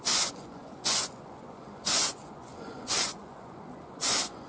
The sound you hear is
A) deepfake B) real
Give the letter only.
A